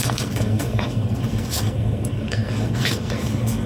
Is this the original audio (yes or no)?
no